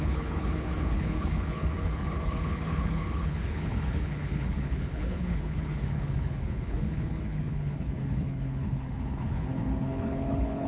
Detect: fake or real fake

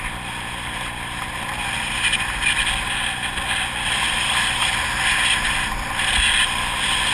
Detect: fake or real real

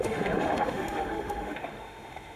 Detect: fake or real fake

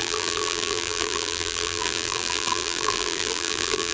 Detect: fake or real fake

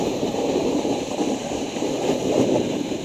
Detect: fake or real fake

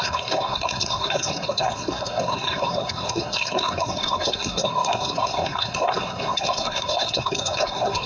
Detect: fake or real fake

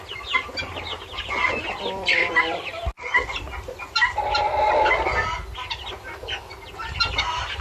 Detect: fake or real real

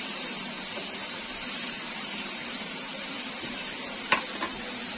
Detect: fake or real fake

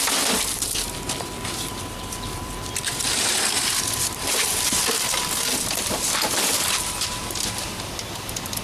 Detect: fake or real fake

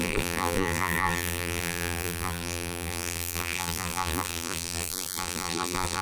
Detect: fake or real fake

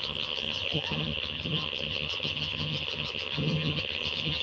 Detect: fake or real fake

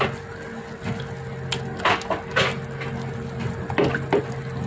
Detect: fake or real real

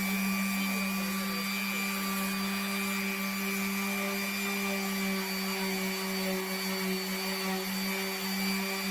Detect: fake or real real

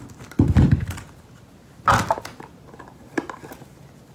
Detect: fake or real real